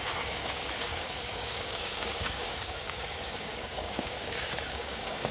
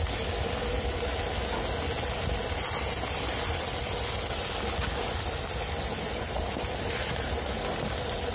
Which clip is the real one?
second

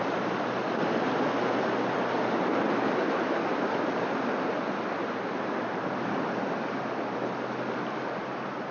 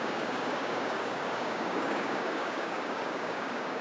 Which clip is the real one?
first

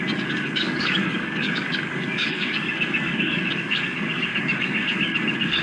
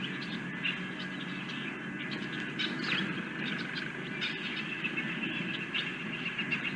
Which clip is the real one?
second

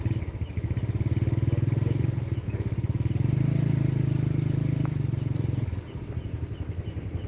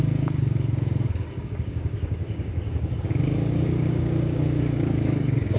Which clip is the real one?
first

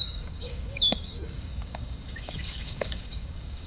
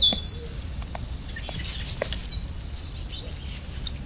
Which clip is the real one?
second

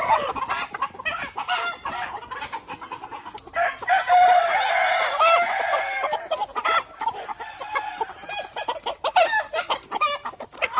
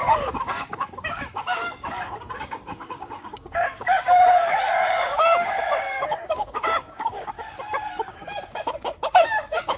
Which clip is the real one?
first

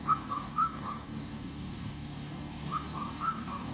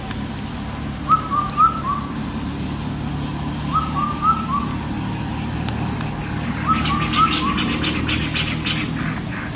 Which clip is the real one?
second